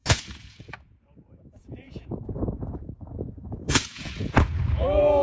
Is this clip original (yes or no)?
no